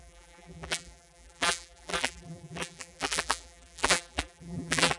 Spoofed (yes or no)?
yes